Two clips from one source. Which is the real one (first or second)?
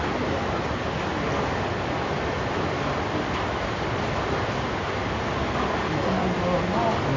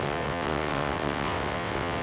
first